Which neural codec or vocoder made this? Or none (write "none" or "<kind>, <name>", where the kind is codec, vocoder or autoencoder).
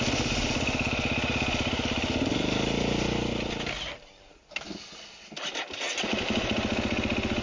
none